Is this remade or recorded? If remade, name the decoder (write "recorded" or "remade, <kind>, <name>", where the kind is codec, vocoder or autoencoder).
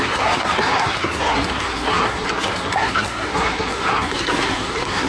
remade, codec, SNAC